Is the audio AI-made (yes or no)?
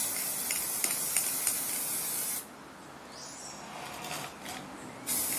no